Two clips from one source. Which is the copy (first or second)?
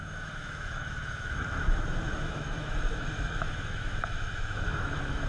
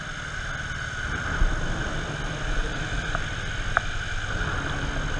first